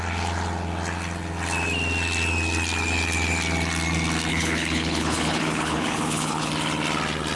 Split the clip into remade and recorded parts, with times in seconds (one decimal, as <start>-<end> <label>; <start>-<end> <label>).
0.0-4.3 recorded; 4.3-6.5 remade; 6.5-7.3 recorded